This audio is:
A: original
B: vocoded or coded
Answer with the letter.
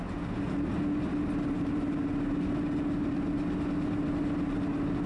A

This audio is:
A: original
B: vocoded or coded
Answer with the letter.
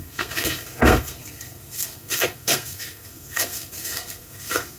B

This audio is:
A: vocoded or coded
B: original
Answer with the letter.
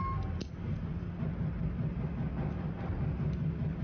B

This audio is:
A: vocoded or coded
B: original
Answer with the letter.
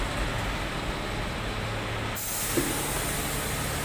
B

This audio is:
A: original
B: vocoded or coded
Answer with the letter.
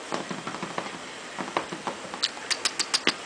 A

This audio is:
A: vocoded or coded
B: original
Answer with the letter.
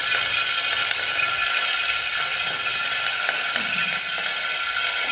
A